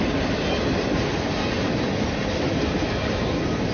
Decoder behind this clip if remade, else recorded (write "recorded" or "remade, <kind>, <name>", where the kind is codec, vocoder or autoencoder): recorded